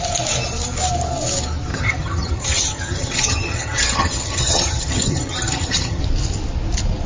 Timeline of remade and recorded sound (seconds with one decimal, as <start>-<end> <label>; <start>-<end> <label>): 0.0-1.7 recorded; 1.7-6.0 remade; 6.0-7.1 recorded

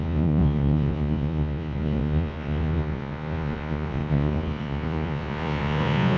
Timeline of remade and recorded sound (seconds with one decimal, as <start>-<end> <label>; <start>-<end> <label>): 0.0-6.2 remade

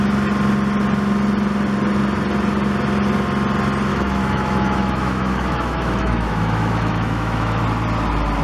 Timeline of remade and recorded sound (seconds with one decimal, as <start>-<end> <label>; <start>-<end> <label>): 0.0-3.9 recorded; 3.9-7.6 remade; 7.6-8.4 recorded

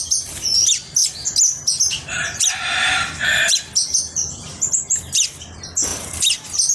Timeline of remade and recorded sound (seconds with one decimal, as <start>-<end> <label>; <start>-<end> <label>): 0.0-6.7 recorded